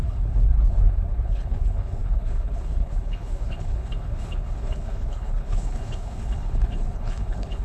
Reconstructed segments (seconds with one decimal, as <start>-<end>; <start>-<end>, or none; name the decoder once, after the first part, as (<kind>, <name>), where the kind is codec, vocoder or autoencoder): 0.0-7.6 (codec, HILCodec)